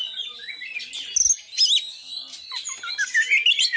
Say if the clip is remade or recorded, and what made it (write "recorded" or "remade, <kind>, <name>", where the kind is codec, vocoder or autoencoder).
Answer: recorded